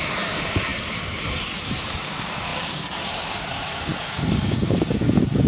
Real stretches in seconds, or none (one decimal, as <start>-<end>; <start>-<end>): none